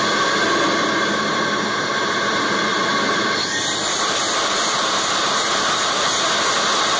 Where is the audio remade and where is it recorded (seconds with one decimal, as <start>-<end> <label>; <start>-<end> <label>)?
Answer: 0.0-2.7 recorded; 2.7-6.0 remade; 6.0-7.0 recorded

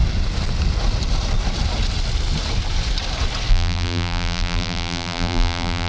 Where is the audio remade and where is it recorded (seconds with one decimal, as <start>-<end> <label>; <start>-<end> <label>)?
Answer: 0.0-3.5 recorded; 3.5-5.9 remade

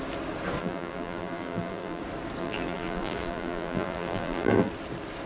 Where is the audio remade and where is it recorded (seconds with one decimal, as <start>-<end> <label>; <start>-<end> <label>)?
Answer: 0.0-0.6 recorded; 0.6-2.0 remade; 2.0-2.4 recorded; 2.4-4.7 remade; 4.7-5.3 recorded

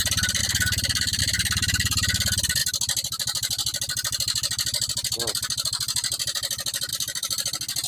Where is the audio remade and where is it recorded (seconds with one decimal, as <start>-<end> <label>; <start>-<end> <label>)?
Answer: 0.0-7.9 recorded

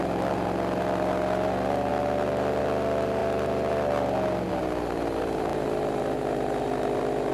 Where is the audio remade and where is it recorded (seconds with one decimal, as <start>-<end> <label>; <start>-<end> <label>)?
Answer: 0.0-7.3 recorded